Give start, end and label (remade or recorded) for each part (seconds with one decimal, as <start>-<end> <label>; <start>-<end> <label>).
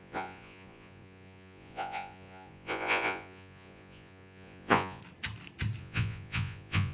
0.0-5.0 remade; 5.0-5.8 recorded; 5.8-6.9 remade